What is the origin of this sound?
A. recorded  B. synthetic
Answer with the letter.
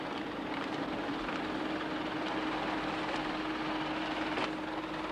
A